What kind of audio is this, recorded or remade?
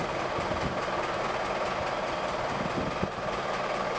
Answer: recorded